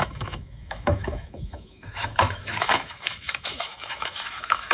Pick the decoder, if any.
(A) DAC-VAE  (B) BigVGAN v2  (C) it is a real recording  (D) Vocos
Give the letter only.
A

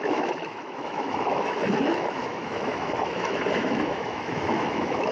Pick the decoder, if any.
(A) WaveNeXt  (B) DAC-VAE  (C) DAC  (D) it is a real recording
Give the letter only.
B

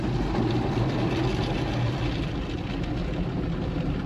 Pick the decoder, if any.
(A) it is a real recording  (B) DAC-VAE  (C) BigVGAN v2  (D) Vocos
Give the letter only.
A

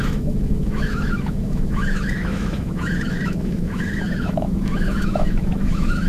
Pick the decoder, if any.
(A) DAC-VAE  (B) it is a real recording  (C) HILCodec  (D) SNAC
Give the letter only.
A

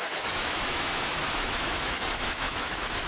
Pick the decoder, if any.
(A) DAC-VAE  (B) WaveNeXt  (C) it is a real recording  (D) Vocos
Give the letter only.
A